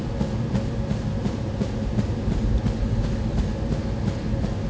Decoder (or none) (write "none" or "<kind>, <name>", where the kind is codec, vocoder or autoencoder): none